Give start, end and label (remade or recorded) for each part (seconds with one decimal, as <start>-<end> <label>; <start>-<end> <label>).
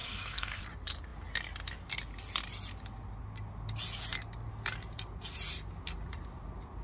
0.0-0.6 remade; 0.6-6.8 recorded